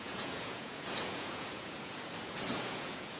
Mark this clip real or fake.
fake